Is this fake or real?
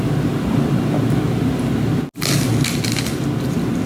real